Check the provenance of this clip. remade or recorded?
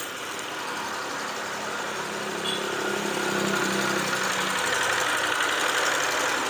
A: recorded